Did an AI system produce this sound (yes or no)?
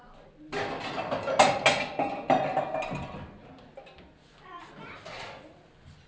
no